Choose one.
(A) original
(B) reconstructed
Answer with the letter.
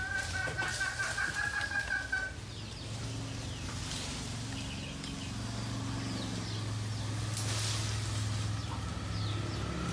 A